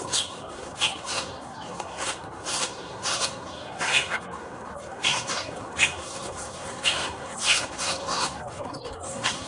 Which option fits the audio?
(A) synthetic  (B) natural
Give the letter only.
A